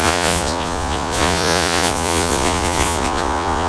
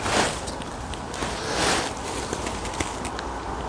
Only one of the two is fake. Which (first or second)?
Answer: first